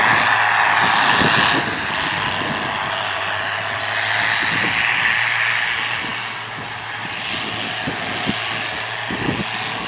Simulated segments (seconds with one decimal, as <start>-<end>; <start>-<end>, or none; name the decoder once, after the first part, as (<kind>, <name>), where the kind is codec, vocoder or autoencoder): none